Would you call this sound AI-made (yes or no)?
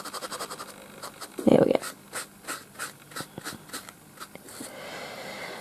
no